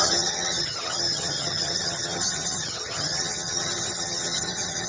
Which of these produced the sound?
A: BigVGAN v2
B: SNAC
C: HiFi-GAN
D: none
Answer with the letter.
C